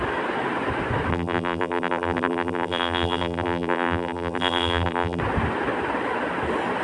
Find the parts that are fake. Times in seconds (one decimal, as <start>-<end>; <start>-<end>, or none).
1.1-5.2